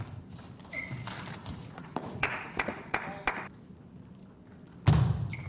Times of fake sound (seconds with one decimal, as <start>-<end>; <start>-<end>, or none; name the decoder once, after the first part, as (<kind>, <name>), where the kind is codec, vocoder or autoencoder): 1.4-3.0 (vocoder, Vocos)